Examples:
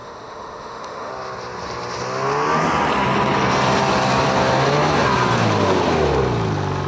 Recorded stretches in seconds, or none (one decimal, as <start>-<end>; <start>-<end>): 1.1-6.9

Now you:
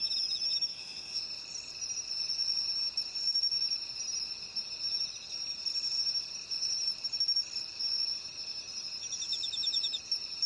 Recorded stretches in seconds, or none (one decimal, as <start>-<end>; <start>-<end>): 0.0-0.7; 1.2-10.5

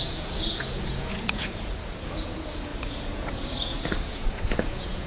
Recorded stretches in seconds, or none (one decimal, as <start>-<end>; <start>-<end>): none

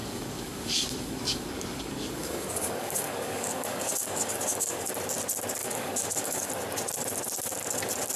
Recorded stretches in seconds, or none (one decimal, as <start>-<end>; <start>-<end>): 4.9-5.6; 6.5-8.2